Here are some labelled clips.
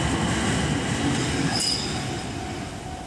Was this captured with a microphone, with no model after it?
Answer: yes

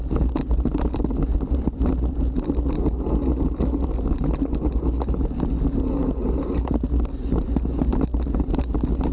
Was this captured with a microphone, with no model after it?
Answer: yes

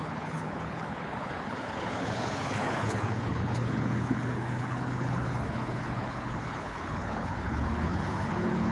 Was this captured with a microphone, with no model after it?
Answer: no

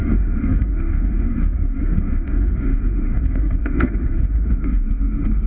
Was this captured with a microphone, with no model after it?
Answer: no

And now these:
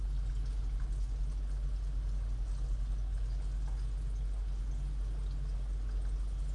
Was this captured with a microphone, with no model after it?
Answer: yes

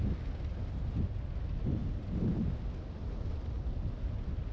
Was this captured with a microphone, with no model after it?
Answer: yes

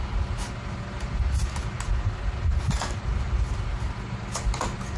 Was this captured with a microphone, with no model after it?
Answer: yes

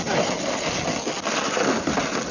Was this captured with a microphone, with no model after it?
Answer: yes